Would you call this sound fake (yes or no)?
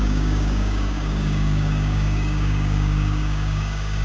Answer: yes